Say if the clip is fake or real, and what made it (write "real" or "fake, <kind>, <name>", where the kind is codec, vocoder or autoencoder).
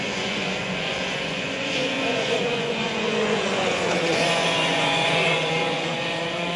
fake, vocoder, Vocos